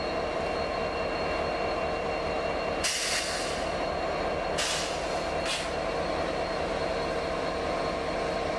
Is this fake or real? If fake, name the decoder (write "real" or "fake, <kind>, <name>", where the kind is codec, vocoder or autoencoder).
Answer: real